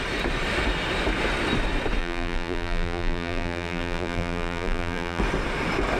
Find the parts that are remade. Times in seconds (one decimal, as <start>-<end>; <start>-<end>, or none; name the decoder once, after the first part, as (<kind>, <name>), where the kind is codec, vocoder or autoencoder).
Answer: 2.0-5.2 (vocoder, BigVGAN v2)